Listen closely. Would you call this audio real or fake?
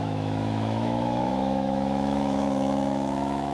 fake